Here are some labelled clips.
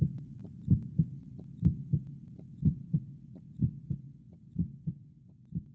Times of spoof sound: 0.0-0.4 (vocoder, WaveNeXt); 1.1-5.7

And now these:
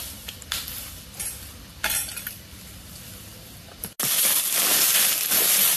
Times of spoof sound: none

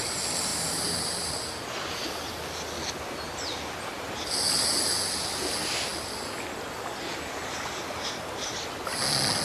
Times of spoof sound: 0.5-1.3 (vocoder, BigVGAN v2)

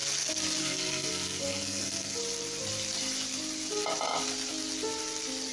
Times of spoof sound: 0.6-2.2 (codec, SNAC)

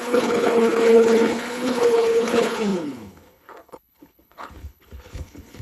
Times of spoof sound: 0.0-5.6 (codec, HILCodec)

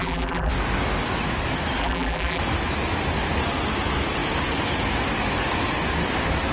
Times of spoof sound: 0.0-0.5 (vocoder, BigVGAN v2); 1.8-2.4

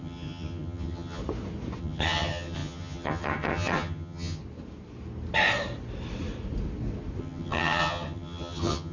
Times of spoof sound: 0.0-1.2 (vocoder, HiFi-GAN); 1.8-4.4; 7.2-8.9